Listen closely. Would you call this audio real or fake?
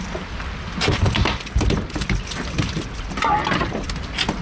real